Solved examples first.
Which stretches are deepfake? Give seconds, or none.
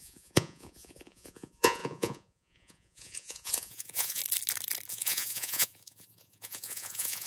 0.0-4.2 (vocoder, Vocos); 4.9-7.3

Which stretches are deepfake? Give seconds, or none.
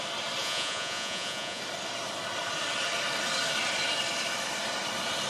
0.4-1.6 (vocoder, Vocos)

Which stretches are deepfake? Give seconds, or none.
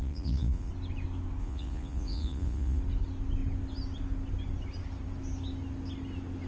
0.0-0.7 (vocoder, Vocos); 1.4-2.8